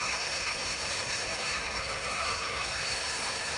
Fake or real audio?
fake